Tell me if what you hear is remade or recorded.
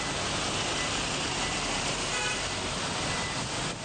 recorded